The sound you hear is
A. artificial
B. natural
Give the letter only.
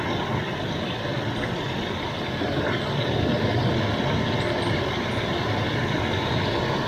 B